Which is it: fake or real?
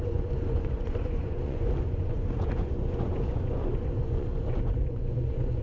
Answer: fake